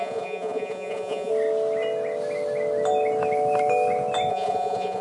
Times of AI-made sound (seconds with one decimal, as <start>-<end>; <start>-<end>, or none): 0.0-1.3; 4.3-5.0

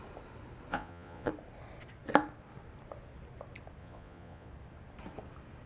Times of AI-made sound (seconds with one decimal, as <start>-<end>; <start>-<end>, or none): 0.7-1.3; 3.8-4.5

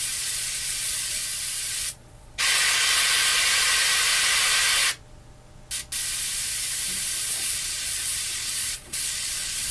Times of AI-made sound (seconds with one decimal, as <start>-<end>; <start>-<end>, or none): 0.0-1.2; 1.7-3.3; 7.3-9.7

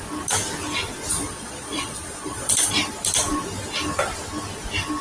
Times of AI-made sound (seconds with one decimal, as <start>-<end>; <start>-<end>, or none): 1.1-2.7